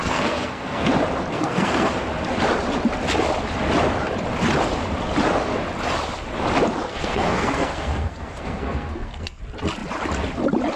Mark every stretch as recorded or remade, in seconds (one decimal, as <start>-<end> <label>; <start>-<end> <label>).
0.0-0.9 remade; 0.9-1.3 recorded; 1.3-1.9 remade; 1.9-6.9 recorded; 6.9-9.4 remade; 9.4-10.8 recorded